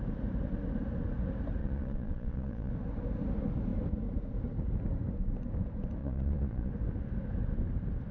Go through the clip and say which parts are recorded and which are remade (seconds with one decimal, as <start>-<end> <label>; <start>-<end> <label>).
0.0-1.6 recorded; 1.6-2.7 remade; 2.7-6.0 recorded; 6.0-6.7 remade; 6.7-8.1 recorded